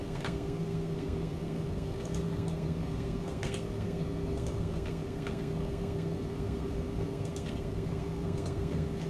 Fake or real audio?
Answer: fake